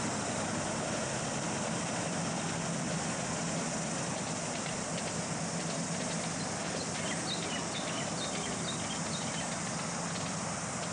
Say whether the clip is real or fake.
real